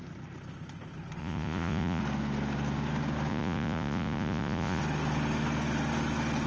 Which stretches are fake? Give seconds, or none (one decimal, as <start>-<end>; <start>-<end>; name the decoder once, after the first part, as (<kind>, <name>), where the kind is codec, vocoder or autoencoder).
1.2-2.0 (vocoder, Vocos); 3.3-4.8